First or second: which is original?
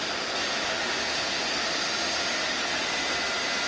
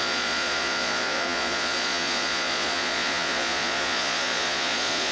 first